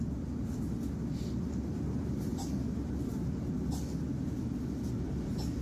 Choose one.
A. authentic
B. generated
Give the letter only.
A